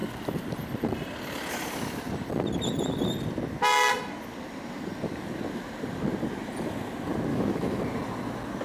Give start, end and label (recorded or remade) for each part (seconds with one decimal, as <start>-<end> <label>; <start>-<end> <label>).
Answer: 0.0-7.3 recorded; 7.3-7.8 remade; 7.8-8.6 recorded